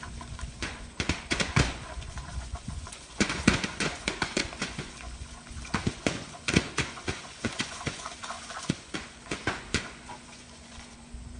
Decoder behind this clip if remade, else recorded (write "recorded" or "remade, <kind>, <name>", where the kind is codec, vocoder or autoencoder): remade, vocoder, Vocos